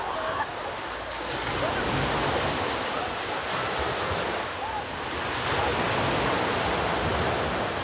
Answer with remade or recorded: recorded